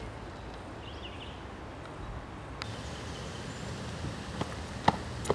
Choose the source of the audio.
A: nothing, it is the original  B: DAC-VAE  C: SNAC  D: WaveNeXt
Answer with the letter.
A